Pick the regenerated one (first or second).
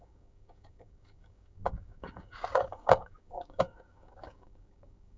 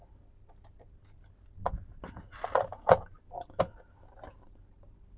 first